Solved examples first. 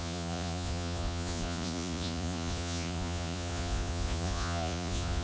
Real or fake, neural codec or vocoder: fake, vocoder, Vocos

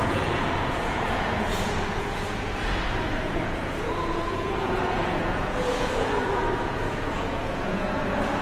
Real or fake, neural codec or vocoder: fake, vocoder, Vocos